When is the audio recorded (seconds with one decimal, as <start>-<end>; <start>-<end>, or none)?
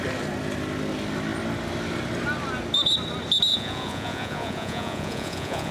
0.0-3.5